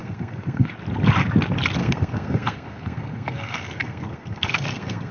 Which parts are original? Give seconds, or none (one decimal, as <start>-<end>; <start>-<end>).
0.7-1.8

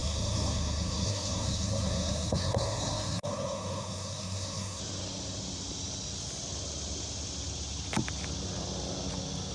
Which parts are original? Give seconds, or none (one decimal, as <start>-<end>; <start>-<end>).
4.8-9.5

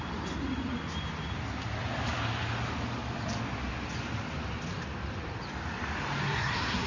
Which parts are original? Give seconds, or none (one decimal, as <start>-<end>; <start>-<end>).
0.0-6.2

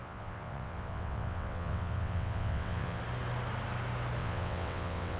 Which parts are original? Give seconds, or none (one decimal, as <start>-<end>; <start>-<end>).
3.0-4.2

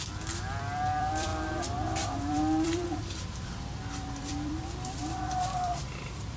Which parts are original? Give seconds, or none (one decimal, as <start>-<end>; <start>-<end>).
1.3-2.3

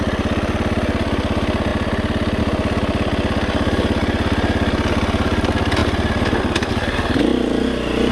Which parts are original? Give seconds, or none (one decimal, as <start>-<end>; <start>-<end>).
0.0-8.1